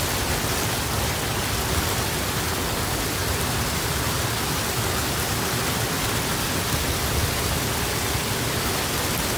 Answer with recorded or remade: recorded